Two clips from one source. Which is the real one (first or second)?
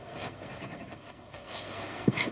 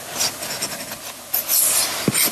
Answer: second